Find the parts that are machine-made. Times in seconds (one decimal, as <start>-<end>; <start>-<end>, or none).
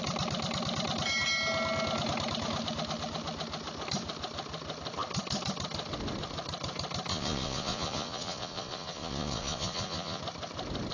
7.1-10.2